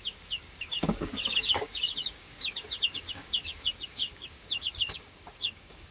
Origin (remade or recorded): remade